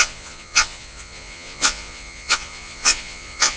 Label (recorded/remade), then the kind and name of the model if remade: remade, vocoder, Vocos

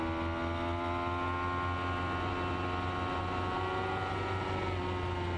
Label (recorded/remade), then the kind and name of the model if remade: recorded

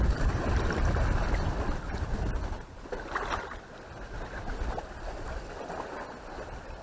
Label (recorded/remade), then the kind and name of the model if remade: recorded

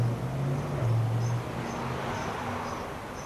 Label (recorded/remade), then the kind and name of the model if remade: recorded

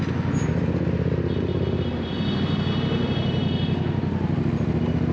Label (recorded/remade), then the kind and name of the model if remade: recorded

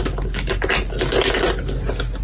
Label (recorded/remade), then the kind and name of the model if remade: recorded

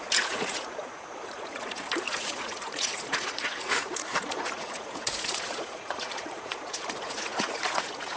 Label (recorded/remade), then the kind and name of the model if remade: remade, vocoder, Vocos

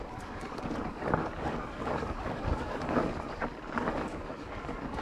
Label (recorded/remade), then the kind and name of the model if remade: remade, codec, DAC